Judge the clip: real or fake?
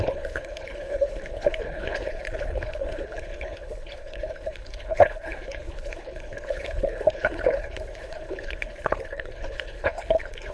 fake